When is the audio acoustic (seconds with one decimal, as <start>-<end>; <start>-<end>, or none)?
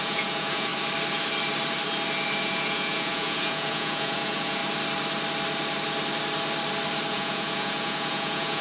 0.7-2.4; 4.6-7.1